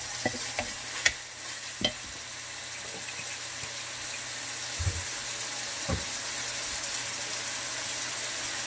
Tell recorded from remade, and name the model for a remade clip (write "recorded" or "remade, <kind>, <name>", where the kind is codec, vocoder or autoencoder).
recorded